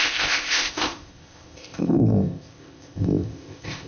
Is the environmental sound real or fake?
fake